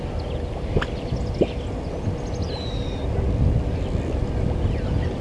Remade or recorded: recorded